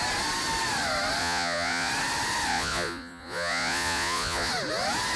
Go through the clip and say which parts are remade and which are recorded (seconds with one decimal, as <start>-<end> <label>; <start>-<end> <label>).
0.0-1.2 recorded; 1.2-1.9 remade; 1.9-2.5 recorded; 2.5-4.5 remade; 4.5-5.2 recorded